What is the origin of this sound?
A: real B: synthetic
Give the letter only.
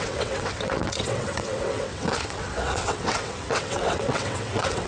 B